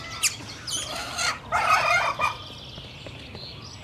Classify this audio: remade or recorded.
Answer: recorded